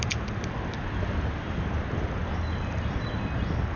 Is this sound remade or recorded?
recorded